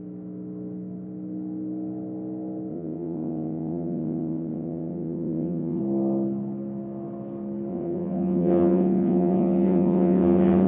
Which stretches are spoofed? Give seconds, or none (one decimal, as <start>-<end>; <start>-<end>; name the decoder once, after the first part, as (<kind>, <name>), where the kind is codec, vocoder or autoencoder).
2.7-5.8 (vocoder, WaveNeXt); 7.7-10.7